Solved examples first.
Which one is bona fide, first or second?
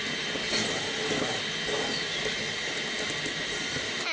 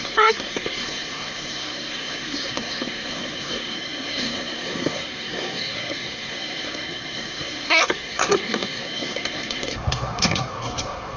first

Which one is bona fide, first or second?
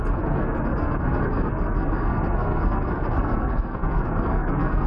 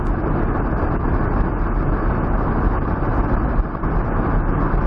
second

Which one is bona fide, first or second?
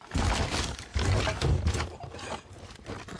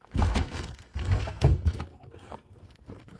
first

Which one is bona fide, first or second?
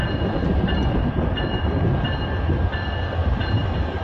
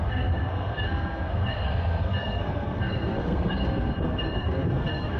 first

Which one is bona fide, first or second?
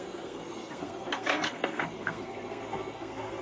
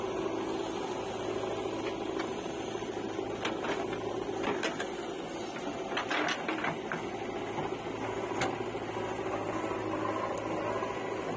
second